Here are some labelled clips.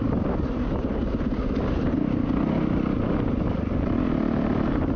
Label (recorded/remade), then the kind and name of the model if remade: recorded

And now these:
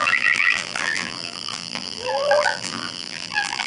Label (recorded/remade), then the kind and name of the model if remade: remade, vocoder, BigVGAN v2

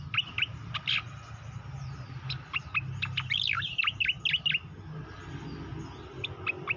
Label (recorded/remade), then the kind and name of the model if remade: recorded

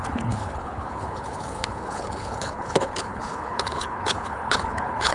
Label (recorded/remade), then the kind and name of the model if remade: remade, codec, HILCodec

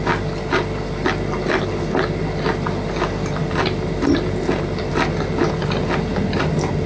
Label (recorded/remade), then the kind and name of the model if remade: recorded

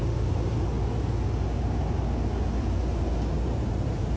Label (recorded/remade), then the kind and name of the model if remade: recorded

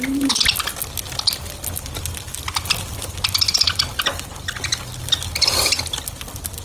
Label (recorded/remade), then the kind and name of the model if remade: recorded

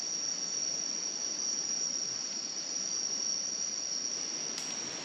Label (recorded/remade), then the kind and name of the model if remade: recorded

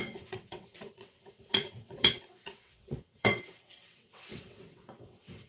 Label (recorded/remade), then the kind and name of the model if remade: remade, vocoder, WaveNeXt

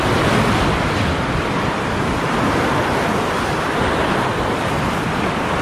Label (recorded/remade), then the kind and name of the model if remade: remade, vocoder, BigVGAN v2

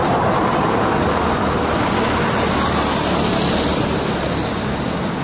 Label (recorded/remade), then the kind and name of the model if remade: recorded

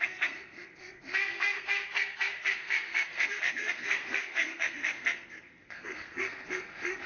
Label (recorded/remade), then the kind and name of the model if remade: remade, codec, SNAC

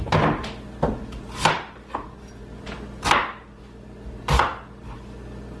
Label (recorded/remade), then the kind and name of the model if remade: recorded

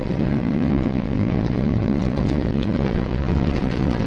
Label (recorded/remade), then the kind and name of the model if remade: remade, vocoder, WaveNeXt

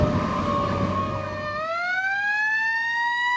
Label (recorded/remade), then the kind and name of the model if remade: recorded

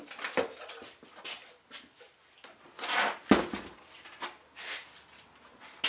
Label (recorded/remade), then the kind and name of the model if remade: recorded